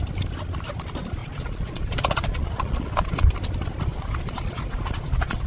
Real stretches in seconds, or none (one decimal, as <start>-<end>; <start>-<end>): 0.0-1.2; 3.3-3.9